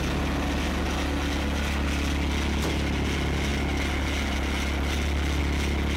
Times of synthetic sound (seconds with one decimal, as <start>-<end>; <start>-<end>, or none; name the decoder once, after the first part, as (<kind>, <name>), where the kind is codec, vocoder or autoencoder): none